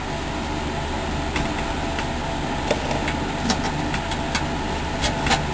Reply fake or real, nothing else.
real